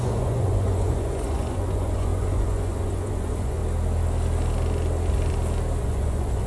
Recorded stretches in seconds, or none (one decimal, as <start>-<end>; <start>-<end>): 3.6-5.8